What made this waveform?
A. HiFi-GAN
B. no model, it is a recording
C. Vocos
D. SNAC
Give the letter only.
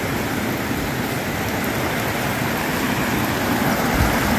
B